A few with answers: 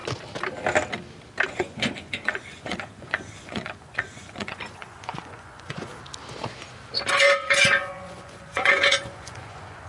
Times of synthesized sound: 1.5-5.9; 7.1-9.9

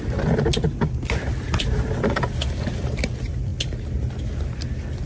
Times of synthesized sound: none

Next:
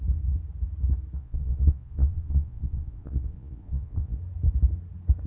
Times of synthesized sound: 1.2-4.2

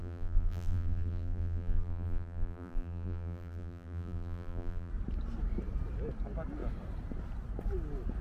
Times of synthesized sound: 0.0-4.9